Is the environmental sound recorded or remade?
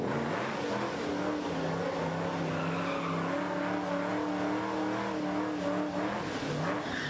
recorded